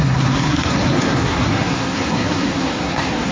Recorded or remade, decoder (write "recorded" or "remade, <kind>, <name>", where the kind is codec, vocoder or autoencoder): remade, codec, SNAC